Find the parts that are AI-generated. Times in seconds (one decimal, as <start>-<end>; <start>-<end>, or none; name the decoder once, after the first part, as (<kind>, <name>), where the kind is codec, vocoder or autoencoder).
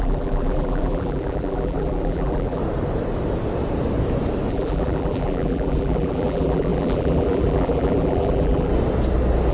0.0-2.6 (vocoder, BigVGAN v2); 4.5-8.7